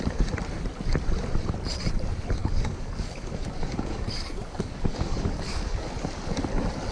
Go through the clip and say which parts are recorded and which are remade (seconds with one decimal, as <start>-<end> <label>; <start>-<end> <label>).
0.0-2.4 recorded; 2.4-5.9 remade; 5.9-6.9 recorded